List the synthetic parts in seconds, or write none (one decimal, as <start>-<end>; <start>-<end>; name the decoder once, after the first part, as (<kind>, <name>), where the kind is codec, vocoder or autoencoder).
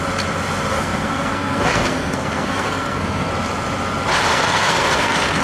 0.7-3.3 (codec, SNAC); 4.3-5.4